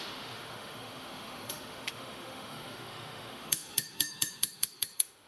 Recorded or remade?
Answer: remade